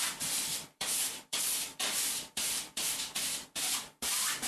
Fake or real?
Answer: fake